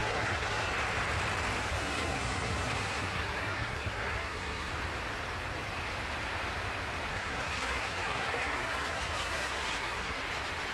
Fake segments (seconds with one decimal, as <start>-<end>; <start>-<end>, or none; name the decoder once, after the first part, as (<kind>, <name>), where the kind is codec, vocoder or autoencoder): 0.0-0.7 (codec, SNAC); 1.6-4.7; 7.1-10.2